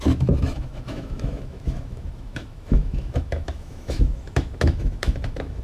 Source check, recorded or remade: remade